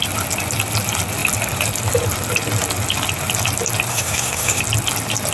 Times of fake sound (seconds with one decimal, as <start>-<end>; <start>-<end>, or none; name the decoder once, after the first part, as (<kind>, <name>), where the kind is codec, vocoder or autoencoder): 3.9-4.6 (codec, SNAC)